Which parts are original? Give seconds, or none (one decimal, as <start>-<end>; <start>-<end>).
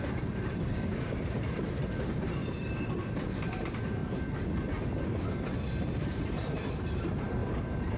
2.4-3.4; 4.0-5.8